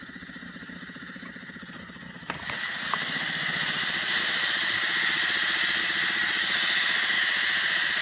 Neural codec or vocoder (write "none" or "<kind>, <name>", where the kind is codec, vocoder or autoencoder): none